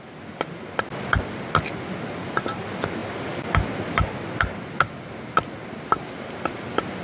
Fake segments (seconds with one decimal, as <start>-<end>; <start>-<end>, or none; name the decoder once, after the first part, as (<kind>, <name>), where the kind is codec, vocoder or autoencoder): none